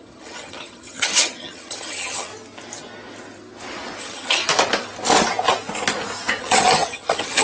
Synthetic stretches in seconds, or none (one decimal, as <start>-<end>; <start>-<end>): 0.0-2.3; 4.0-4.4; 6.4-7.4